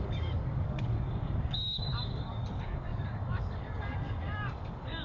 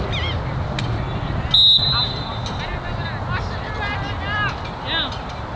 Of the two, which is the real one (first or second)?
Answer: second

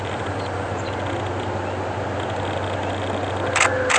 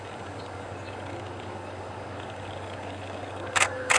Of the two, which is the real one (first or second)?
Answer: first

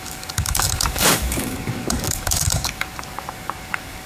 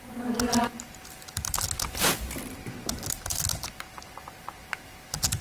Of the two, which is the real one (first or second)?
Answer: second